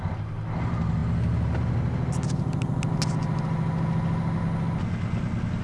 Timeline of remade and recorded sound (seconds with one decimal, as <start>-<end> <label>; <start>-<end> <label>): 0.0-5.6 recorded